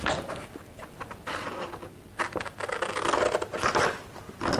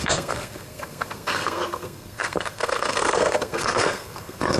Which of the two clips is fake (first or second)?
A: second